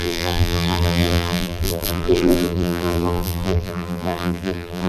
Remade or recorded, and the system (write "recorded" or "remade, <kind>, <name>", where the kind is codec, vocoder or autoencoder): remade, vocoder, BigVGAN v2